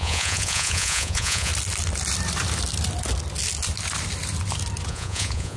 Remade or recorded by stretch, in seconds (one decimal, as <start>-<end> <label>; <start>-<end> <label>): 0.0-1.5 remade; 1.5-4.9 recorded; 4.9-5.6 remade